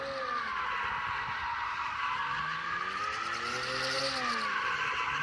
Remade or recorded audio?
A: recorded